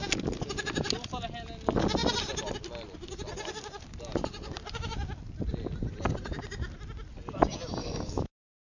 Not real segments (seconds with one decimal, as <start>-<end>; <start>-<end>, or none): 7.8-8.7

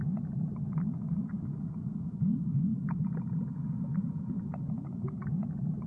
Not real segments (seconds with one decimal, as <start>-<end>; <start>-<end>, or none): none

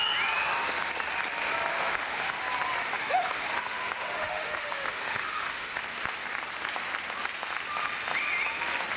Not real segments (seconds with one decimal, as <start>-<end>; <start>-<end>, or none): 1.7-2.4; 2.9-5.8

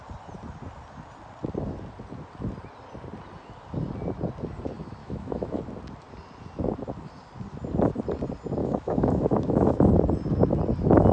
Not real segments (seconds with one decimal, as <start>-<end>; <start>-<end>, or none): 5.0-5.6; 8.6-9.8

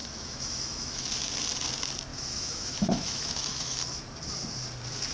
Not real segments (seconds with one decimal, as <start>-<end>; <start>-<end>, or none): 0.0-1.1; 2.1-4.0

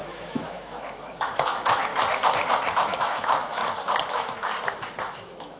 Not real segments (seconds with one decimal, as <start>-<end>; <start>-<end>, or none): 0.0-1.9; 3.0-3.6; 4.1-4.5; 5.0-5.6